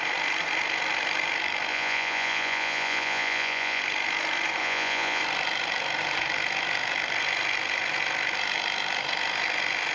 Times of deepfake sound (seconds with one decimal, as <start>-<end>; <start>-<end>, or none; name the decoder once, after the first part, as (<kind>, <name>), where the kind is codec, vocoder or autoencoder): 1.7-3.8 (vocoder, Vocos); 4.6-5.2